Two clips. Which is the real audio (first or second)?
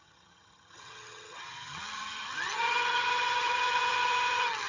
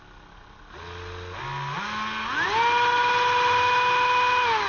second